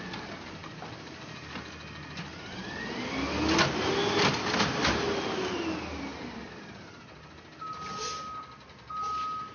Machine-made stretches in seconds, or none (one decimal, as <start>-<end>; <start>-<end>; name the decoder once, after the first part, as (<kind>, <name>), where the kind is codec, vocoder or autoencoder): none